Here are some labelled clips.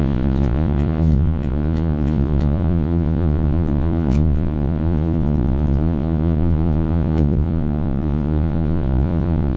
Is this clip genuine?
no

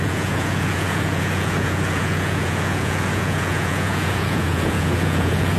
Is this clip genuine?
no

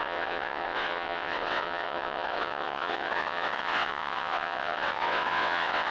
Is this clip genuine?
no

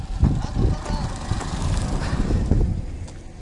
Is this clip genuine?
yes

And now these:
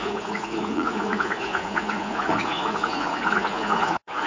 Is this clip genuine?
no